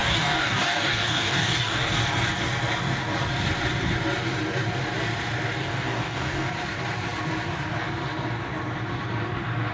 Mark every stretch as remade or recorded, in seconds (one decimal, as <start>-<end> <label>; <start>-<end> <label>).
0.0-1.9 remade; 1.9-5.6 recorded; 5.6-6.5 remade; 6.5-9.7 recorded